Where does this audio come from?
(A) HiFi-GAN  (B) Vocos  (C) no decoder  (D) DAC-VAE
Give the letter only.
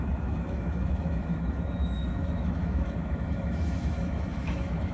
D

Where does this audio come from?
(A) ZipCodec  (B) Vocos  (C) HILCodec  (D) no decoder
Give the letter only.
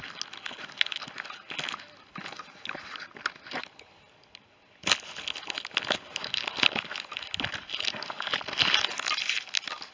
D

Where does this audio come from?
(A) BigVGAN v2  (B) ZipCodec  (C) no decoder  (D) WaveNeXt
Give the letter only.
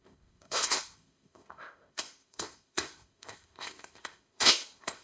B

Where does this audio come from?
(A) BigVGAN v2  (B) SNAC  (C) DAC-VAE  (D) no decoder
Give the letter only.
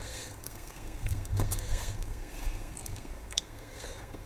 B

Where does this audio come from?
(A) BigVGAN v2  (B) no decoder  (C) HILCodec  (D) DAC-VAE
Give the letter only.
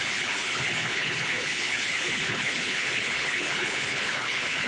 C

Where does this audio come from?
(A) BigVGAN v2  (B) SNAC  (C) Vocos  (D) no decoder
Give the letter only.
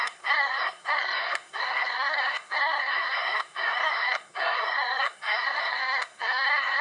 B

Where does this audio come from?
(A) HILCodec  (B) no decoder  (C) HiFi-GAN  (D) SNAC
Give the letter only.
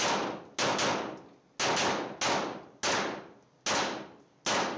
B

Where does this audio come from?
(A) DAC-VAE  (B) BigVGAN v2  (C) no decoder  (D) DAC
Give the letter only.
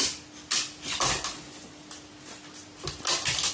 C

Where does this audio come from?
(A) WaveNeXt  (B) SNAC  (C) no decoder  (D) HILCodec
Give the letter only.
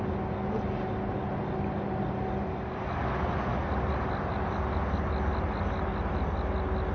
C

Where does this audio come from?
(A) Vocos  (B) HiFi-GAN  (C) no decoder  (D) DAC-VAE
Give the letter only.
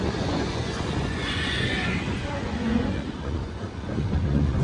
A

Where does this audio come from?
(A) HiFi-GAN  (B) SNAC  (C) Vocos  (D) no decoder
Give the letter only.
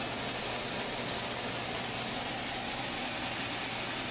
D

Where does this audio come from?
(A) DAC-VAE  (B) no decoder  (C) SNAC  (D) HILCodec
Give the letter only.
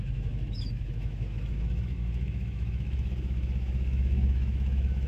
A